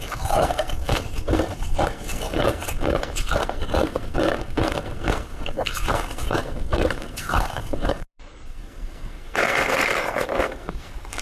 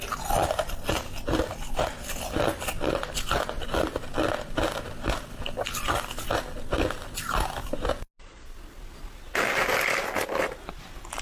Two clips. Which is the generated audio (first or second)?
first